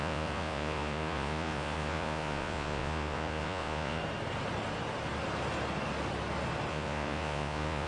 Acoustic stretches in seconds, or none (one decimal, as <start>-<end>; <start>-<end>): 4.0-6.7